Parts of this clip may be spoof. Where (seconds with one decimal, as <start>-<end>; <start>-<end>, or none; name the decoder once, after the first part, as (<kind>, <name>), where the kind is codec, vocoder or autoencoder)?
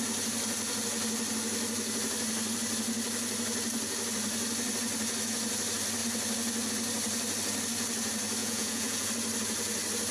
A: 8.4-9.1 (vocoder, Vocos)